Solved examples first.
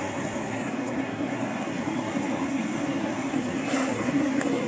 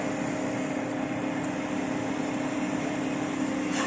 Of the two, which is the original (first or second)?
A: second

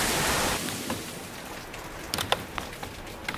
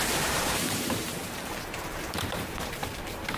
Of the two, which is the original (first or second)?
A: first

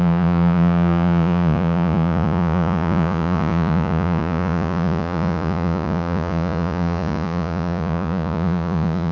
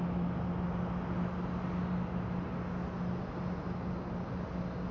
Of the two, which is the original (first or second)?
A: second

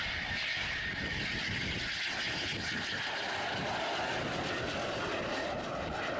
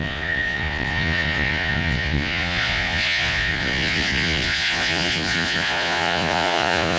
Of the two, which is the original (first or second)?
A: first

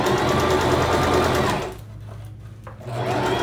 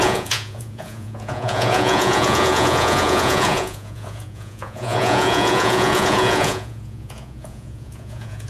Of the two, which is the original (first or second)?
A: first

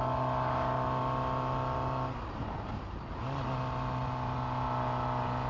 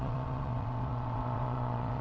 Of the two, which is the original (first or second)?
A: first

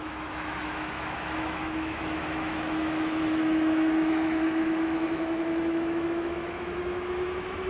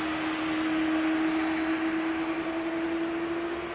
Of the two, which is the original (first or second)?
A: second